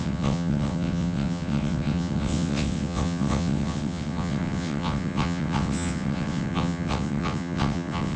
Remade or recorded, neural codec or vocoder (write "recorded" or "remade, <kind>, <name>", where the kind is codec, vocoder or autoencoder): remade, vocoder, WaveNeXt